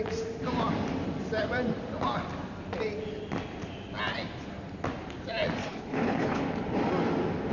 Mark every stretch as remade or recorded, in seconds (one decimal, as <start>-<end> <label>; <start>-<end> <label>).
0.0-5.6 recorded; 5.6-6.4 remade; 6.4-7.5 recorded